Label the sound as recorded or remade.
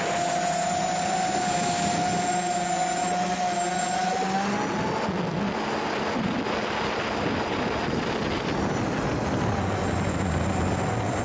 recorded